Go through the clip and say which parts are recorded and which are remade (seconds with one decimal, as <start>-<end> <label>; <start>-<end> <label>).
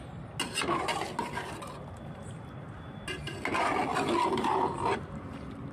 0.0-3.9 recorded; 3.9-5.7 remade